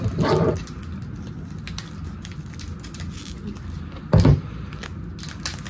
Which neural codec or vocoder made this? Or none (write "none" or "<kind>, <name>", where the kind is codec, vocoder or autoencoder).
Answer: none